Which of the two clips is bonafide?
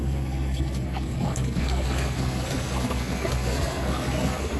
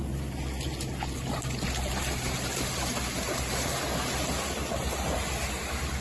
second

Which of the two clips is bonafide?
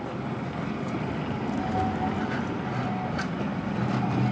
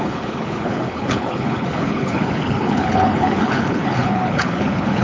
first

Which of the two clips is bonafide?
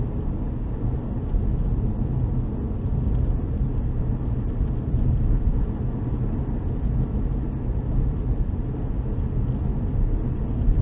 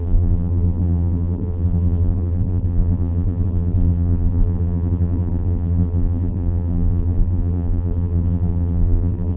first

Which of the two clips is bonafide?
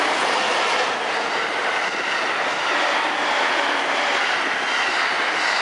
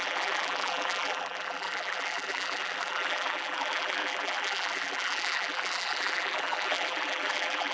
first